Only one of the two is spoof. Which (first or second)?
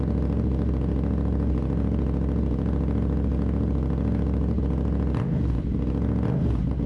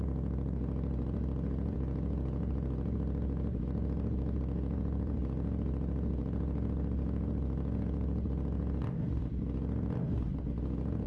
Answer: second